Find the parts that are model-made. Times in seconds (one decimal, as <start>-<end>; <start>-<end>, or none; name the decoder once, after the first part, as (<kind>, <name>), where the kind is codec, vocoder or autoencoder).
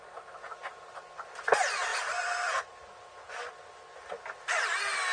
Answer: none